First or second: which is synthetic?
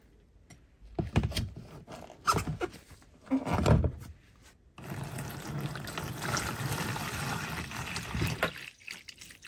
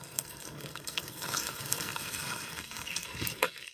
second